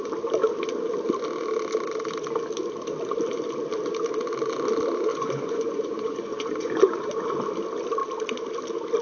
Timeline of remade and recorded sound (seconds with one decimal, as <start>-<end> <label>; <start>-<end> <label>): 0.0-5.1 recorded; 5.1-7.1 remade; 7.1-9.0 recorded